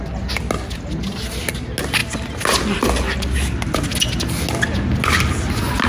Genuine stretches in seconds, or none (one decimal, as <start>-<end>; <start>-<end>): 0.0-5.9